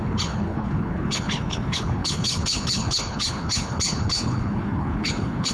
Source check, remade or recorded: remade